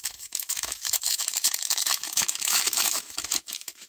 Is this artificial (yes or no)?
yes